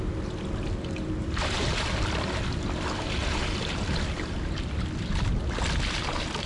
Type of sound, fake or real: real